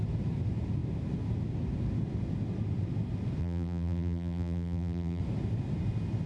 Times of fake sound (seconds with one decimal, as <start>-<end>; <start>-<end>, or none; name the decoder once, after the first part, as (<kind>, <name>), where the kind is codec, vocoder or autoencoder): 3.4-5.2 (vocoder, BigVGAN v2)